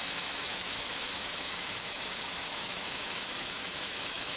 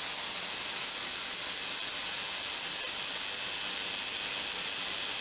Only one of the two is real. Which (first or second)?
second